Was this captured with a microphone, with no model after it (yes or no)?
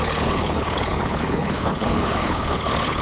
no